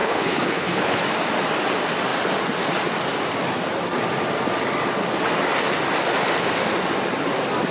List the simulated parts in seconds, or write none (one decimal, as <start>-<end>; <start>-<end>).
0.0-1.0